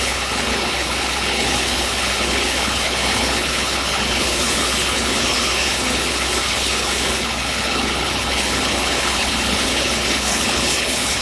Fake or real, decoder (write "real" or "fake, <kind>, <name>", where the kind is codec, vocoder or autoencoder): fake, codec, HILCodec